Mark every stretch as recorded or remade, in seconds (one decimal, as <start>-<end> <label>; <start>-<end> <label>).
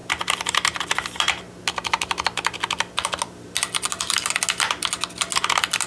0.0-5.9 recorded